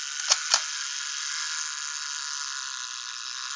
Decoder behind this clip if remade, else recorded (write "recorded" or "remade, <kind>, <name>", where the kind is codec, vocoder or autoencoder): recorded